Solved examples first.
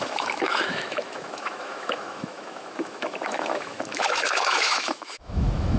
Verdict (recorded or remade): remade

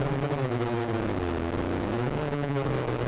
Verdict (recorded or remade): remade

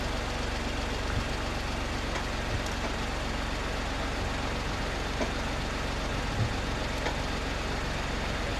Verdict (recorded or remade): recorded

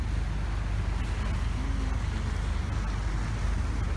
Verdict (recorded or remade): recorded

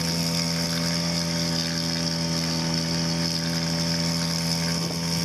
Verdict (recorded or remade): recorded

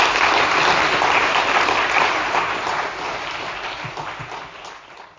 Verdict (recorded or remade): recorded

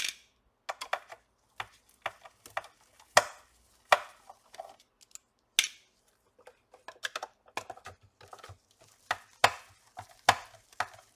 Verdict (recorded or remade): recorded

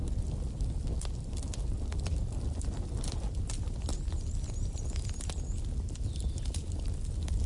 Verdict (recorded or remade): recorded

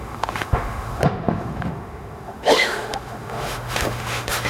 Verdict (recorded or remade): remade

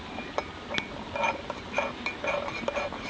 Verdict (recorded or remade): recorded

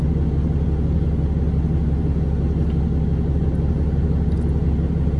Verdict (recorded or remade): recorded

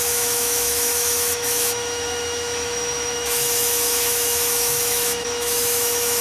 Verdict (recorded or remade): remade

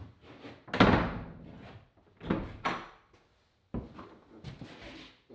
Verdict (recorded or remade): recorded